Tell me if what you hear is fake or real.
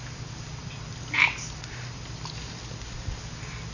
real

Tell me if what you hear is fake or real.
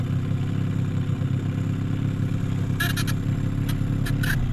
real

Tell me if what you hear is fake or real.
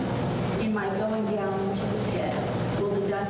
real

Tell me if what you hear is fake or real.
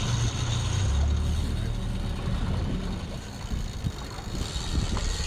real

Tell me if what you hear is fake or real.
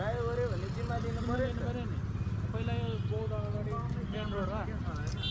real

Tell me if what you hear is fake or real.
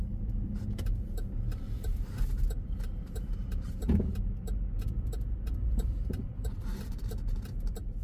fake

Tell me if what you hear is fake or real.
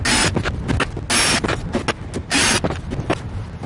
real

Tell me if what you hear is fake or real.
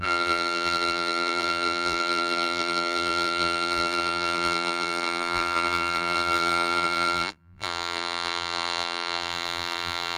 fake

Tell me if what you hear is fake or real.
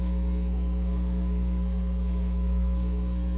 fake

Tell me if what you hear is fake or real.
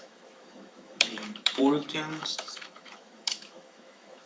fake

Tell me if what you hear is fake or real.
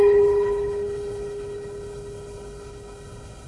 fake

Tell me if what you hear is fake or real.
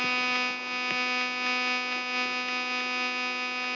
real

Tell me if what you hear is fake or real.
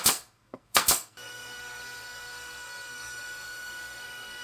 fake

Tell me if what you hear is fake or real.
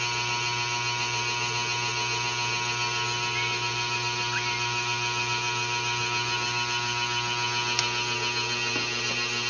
real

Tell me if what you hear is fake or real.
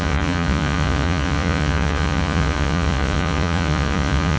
fake